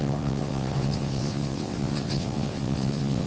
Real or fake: fake